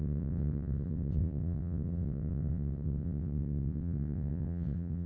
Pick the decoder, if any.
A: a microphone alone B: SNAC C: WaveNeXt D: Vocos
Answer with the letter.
C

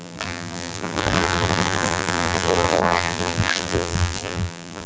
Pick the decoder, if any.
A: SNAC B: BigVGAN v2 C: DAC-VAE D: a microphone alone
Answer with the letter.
B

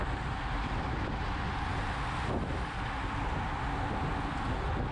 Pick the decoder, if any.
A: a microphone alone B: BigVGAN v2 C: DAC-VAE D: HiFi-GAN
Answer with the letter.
A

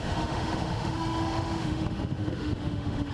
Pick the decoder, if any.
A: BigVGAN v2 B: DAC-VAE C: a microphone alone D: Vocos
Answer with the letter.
B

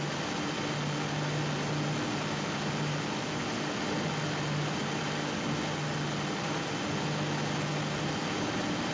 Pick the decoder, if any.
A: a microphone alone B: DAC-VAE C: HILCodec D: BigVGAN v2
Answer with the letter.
A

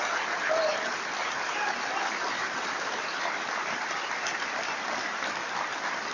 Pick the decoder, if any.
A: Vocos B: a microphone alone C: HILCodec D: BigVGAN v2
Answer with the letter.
B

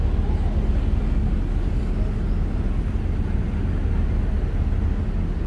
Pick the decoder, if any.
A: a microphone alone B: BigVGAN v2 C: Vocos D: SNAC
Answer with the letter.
A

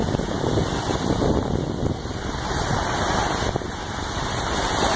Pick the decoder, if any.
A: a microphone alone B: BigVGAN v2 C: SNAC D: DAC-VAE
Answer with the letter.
A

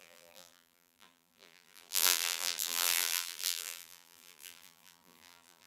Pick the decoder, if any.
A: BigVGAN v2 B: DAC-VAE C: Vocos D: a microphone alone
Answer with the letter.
A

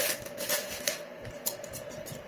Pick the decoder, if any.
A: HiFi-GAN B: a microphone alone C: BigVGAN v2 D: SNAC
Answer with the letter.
B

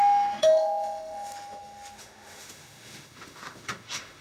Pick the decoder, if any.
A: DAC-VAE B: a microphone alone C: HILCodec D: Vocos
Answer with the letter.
A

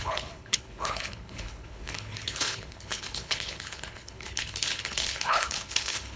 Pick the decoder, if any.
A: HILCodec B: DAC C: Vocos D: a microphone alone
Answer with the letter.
A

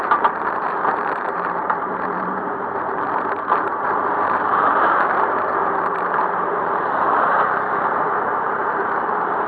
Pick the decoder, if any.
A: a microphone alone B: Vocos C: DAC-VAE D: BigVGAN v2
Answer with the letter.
D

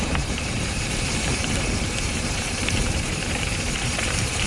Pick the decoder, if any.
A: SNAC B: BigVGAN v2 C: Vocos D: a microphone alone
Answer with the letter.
B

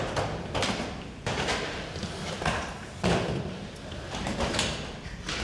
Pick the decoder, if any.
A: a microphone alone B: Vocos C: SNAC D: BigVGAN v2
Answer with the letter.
A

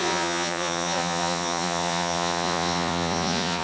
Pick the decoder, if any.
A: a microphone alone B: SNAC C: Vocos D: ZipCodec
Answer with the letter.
C